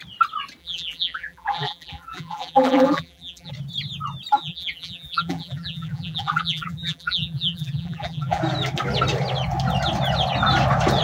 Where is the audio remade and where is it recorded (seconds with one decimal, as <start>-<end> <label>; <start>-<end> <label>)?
0.0-0.6 recorded; 0.6-3.5 remade; 3.5-4.4 recorded; 4.4-8.4 remade; 8.4-11.0 recorded